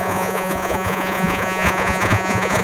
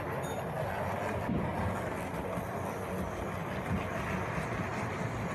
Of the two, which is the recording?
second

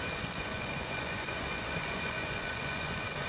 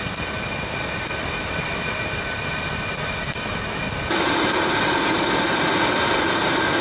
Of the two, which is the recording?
second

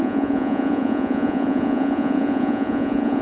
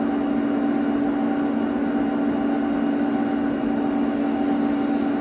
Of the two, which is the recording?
second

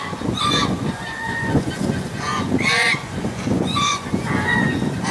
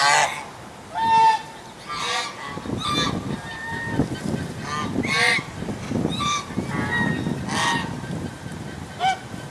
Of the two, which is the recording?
second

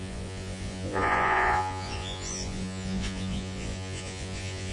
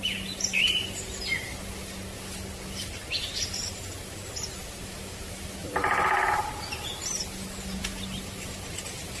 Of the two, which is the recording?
second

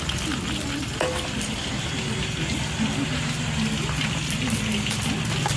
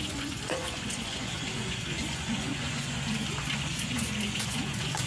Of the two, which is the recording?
first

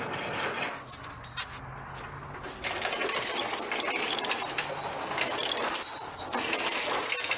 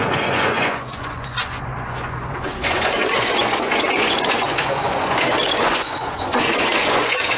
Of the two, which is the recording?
first